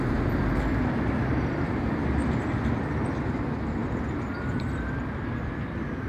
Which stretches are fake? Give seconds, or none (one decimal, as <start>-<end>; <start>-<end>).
none